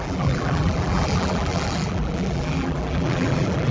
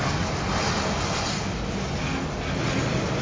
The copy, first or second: first